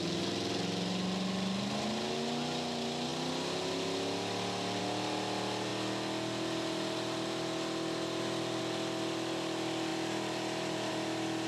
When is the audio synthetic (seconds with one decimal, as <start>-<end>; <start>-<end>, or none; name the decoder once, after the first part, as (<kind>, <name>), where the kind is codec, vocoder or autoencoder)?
none